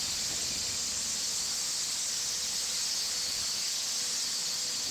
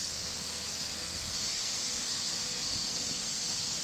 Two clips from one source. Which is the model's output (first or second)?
second